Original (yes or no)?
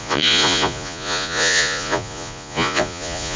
no